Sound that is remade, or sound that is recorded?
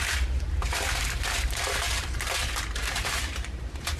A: remade